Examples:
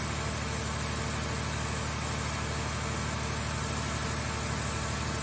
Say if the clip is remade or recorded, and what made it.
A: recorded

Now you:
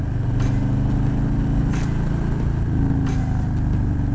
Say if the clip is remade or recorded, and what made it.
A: recorded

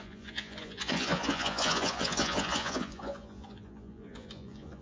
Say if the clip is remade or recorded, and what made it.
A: remade, vocoder, Vocos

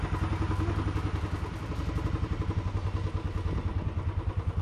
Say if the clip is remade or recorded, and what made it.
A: recorded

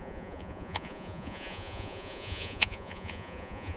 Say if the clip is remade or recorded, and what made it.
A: remade, vocoder, Vocos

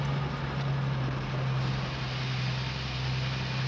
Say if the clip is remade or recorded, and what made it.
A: recorded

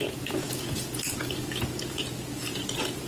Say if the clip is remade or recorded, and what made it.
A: remade, vocoder, Vocos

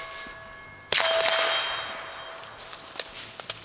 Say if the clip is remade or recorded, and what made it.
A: recorded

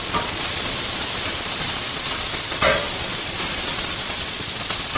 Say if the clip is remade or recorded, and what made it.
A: remade, vocoder, Vocos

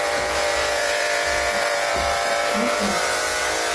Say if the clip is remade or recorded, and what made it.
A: remade, vocoder, Vocos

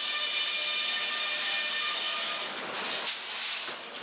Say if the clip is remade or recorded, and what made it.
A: recorded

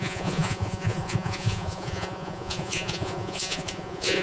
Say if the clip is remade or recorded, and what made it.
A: remade, vocoder, Vocos